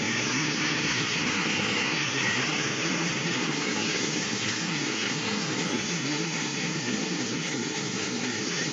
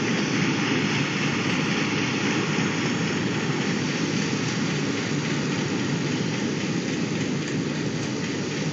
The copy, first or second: first